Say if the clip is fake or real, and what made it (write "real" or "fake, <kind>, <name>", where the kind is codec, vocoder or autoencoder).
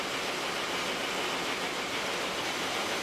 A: real